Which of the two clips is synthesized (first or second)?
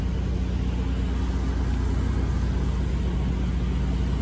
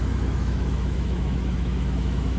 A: second